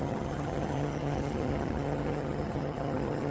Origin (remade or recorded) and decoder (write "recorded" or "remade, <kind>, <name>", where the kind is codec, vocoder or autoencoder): remade, vocoder, HiFi-GAN